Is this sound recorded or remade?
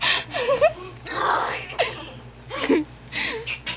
remade